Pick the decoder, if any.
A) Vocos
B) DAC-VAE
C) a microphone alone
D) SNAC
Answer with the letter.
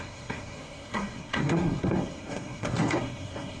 D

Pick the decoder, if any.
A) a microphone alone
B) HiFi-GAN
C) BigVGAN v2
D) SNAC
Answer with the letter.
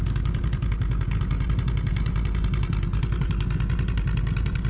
A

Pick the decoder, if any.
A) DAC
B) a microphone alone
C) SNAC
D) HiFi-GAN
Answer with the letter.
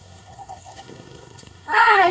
C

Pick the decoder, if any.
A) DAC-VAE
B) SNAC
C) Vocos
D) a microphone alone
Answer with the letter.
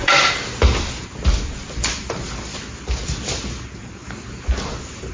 D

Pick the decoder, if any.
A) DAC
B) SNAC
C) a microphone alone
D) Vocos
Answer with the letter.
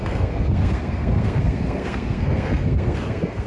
B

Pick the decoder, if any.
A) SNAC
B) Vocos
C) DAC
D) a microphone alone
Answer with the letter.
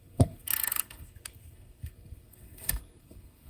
A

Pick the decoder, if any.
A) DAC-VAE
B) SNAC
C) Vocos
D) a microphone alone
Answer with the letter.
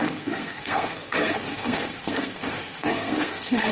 B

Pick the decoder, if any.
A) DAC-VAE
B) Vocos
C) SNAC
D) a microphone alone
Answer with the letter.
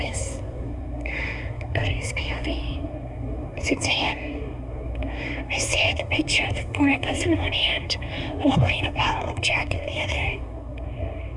C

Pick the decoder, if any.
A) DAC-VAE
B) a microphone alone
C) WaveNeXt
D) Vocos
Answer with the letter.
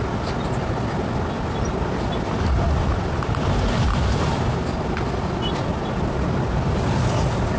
B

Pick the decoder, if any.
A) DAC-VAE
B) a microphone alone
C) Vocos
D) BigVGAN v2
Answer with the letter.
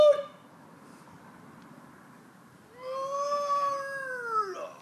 B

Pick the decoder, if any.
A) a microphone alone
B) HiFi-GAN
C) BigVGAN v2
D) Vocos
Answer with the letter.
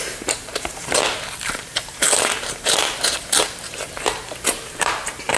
C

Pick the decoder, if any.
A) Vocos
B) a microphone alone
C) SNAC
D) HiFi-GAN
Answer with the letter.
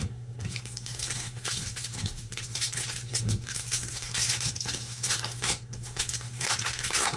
C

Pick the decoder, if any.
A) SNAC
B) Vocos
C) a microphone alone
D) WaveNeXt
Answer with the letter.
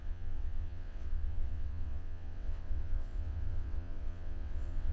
D